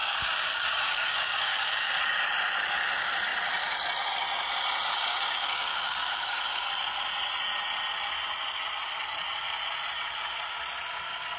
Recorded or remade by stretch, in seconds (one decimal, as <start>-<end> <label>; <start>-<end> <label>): 0.0-2.0 remade; 2.0-5.1 recorded; 5.1-6.7 remade; 6.7-11.4 recorded